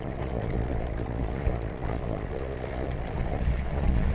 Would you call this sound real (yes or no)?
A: no